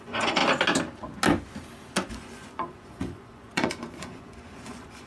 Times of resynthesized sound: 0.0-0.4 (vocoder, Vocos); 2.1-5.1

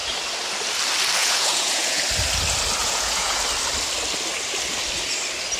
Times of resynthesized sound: 1.2-2.0 (vocoder, Vocos); 2.8-3.4

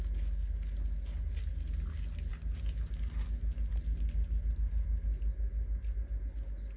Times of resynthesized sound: none

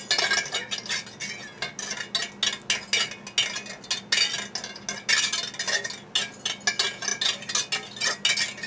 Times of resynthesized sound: none

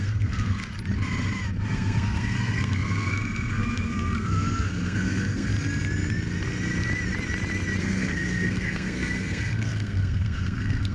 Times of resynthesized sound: 0.0-0.6 (codec, SNAC); 1.6-5.5; 7.8-10.9

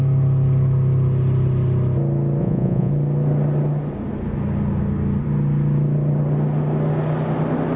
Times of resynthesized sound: 2.4-2.9 (vocoder, Vocos)

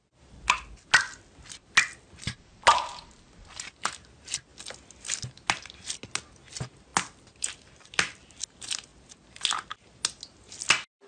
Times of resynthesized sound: none